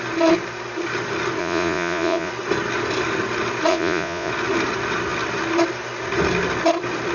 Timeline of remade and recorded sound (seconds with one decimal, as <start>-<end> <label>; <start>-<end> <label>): 0.0-1.4 recorded; 1.4-2.3 remade; 2.3-3.7 recorded; 3.7-4.3 remade; 4.3-7.1 recorded